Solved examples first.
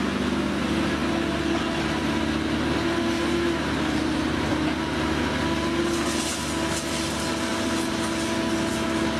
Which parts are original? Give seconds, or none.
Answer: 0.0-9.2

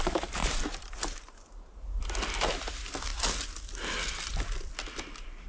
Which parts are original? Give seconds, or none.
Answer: 0.0-0.4; 2.0-5.5